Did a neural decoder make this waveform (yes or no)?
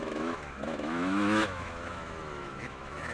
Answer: yes